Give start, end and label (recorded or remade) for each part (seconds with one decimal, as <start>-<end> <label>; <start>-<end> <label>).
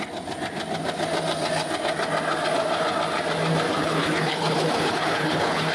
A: 0.0-3.8 recorded; 3.8-5.7 remade